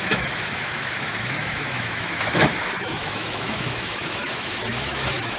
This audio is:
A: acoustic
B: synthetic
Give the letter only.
B